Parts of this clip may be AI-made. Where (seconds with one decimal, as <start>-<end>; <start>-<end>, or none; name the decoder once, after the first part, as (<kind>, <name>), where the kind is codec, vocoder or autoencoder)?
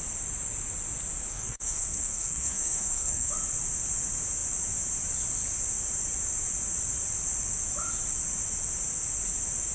1.3-3.3 (codec, SNAC)